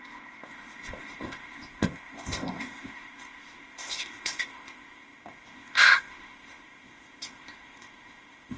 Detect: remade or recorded remade